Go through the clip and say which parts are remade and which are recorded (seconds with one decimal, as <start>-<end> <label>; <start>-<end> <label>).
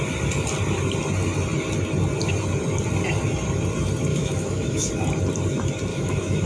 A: 0.0-4.1 recorded; 4.1-4.9 remade; 4.9-5.9 recorded; 5.9-6.5 remade